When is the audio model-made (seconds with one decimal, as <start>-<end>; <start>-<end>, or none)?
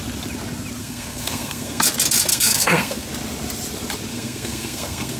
0.8-1.8; 2.3-3.1; 4.1-5.2